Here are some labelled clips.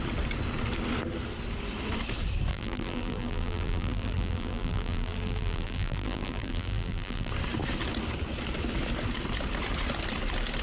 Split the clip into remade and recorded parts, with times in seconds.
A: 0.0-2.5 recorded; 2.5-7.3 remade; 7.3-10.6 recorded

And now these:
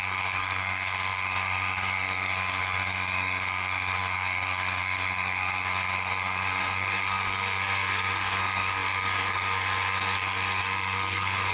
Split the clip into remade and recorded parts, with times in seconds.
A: 0.0-11.5 remade

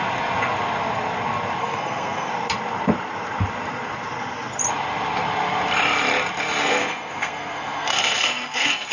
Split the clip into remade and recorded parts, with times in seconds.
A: 0.0-1.6 recorded; 1.6-2.3 remade; 2.3-6.6 recorded; 6.6-8.9 remade

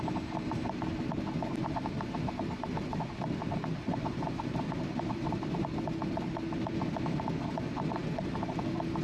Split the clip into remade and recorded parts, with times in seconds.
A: 0.0-2.9 recorded; 2.9-6.7 remade; 6.7-9.0 recorded

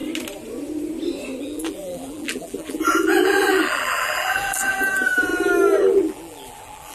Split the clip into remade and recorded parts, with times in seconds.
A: 0.0-1.4 recorded; 1.4-5.3 remade; 5.3-5.9 recorded; 5.9-6.9 remade